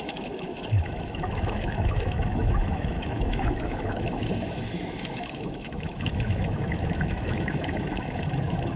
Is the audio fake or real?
fake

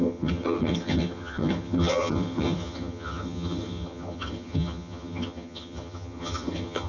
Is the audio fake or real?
fake